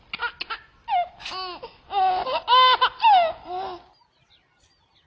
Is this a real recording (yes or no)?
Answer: yes